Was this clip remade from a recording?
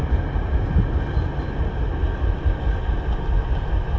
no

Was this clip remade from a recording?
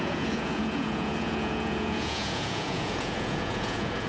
yes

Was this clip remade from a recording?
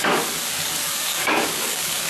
yes